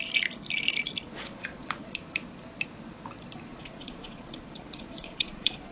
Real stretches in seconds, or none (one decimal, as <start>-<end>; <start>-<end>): 0.0-1.1; 2.0-3.5